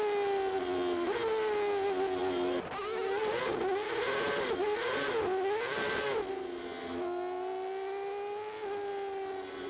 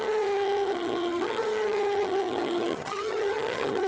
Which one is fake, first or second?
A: second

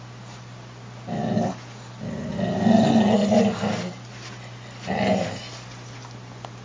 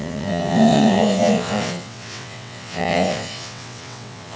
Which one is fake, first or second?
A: second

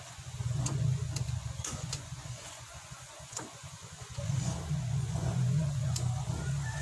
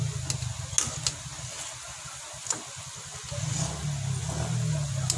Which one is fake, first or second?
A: first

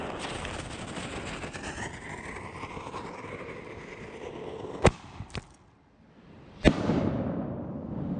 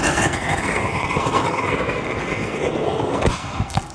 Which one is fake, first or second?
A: second